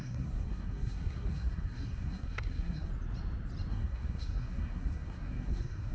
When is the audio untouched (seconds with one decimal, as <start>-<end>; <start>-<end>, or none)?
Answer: 2.9-3.7